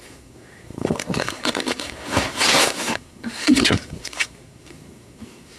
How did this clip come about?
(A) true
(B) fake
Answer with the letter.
B